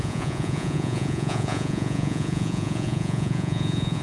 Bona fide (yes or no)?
no